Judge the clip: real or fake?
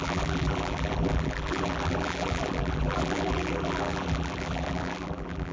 fake